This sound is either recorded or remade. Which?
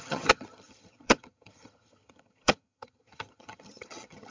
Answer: remade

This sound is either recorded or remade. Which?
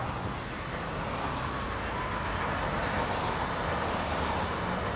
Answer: recorded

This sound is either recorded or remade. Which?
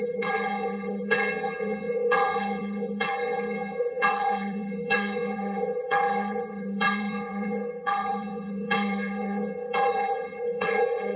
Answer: remade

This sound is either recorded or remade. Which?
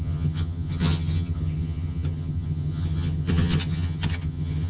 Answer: remade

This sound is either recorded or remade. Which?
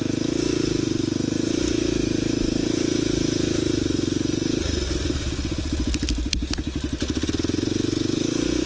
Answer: recorded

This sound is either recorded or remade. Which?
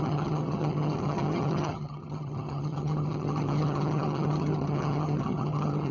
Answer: remade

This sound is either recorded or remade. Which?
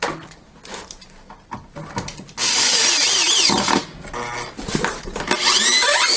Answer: recorded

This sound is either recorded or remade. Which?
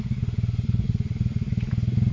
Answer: recorded